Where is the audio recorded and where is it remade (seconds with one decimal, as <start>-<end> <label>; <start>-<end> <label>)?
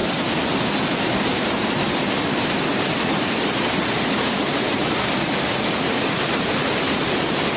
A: 0.0-1.3 recorded; 1.3-2.5 remade; 2.5-3.8 recorded; 3.8-5.3 remade; 5.3-7.6 recorded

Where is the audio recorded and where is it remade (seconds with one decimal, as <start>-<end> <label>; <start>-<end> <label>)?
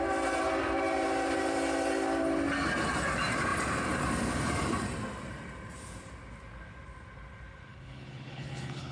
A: 0.0-7.7 recorded; 7.7-8.9 remade